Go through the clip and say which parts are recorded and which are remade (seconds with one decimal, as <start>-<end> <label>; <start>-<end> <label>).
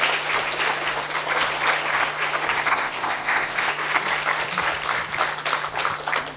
0.0-2.7 recorded; 2.7-3.7 remade; 3.7-6.4 recorded